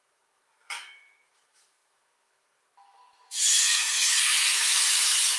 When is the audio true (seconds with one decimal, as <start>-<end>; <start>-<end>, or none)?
none